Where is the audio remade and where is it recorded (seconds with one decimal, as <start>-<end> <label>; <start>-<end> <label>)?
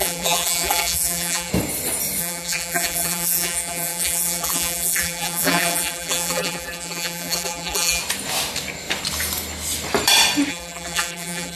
0.0-1.5 remade; 1.5-2.2 recorded; 2.2-8.0 remade; 8.0-10.5 recorded; 10.5-11.6 remade